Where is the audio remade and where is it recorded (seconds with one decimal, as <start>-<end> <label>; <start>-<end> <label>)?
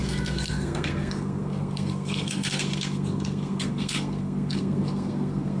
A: 0.0-5.6 remade